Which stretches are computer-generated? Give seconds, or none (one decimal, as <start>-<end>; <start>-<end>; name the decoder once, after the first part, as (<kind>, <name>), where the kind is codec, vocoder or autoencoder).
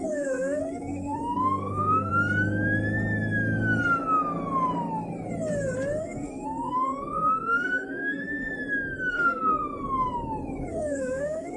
0.0-2.1 (codec, SNAC); 6.0-8.5; 9.1-9.7; 10.7-11.6